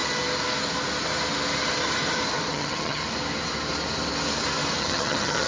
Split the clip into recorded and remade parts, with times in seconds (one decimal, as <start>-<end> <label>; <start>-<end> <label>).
0.0-2.5 recorded; 2.5-3.0 remade; 3.0-4.8 recorded; 4.8-5.5 remade